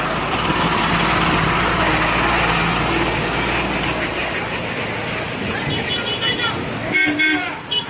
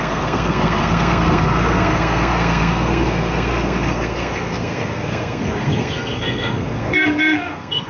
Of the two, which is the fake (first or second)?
second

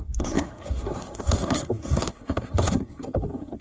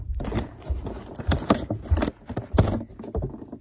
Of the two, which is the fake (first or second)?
first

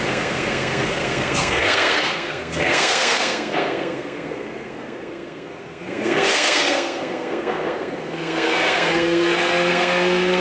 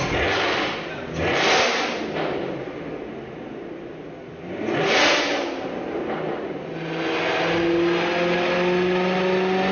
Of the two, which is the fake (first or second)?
first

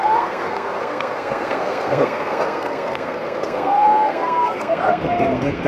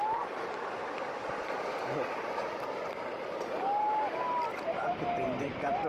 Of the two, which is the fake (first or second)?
first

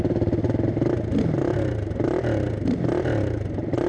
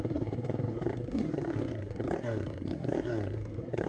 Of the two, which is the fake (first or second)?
second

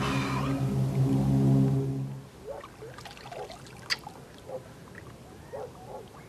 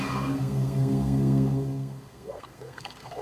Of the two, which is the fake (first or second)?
second